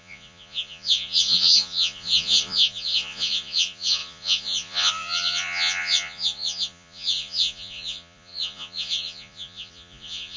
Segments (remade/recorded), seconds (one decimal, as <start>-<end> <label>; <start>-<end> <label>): 0.0-10.4 remade